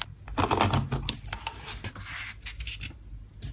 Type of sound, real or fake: real